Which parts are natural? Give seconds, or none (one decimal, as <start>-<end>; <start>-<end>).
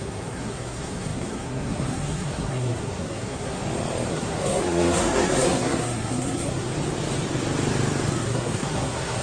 3.6-4.1; 6.7-8.2